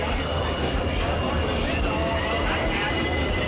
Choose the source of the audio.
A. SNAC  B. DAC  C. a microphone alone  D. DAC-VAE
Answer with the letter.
C